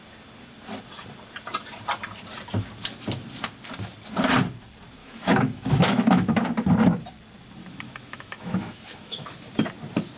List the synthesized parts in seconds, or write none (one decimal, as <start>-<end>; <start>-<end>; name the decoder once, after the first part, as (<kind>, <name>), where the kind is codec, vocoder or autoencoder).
5.0-6.4 (autoencoder, DAC-VAE); 7.6-9.5